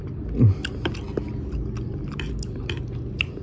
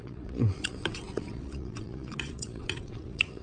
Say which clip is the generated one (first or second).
second